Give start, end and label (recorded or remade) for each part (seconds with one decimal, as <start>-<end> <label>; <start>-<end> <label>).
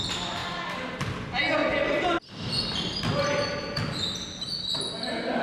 0.0-5.4 recorded